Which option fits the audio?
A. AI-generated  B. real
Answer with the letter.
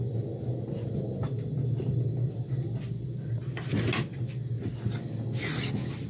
B